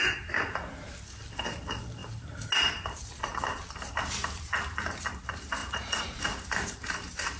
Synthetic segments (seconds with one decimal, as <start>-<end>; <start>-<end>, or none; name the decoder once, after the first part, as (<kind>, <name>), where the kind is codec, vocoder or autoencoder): 5.6-6.2 (vocoder, Vocos)